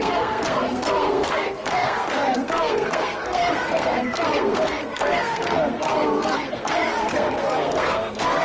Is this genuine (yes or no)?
no